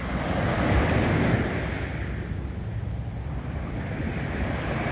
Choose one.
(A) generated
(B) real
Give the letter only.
B